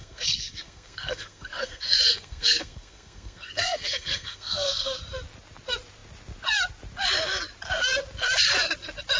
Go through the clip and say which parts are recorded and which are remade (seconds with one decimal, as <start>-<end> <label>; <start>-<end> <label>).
0.0-5.0 remade; 5.0-9.2 recorded

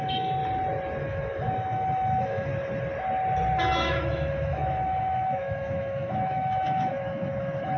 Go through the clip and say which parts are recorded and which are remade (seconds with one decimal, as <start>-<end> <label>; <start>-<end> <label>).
0.0-0.4 remade; 0.4-1.0 recorded; 1.0-2.5 remade; 2.5-3.6 recorded; 3.6-7.8 remade

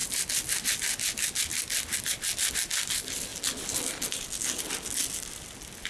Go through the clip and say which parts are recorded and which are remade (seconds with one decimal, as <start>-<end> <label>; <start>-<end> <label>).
0.0-5.9 recorded

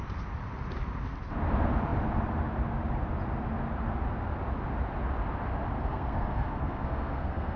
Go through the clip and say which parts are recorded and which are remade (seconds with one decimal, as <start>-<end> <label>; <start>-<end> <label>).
0.0-5.8 recorded; 5.8-7.6 remade

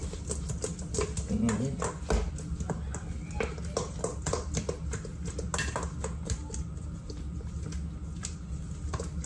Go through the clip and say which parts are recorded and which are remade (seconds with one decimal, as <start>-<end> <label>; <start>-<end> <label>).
0.0-9.3 recorded

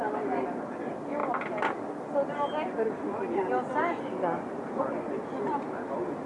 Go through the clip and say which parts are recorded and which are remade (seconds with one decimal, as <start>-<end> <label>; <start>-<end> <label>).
0.0-6.3 recorded

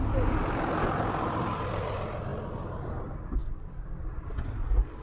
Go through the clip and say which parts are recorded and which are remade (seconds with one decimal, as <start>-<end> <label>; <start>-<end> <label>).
0.0-2.3 remade; 2.3-2.9 recorded; 2.9-3.4 remade; 3.4-4.3 recorded; 4.3-5.0 remade